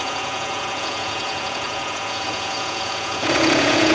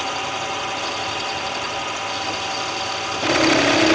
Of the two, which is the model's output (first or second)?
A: first